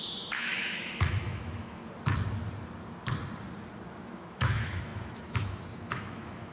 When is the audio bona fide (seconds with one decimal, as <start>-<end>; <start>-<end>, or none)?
1.8-3.9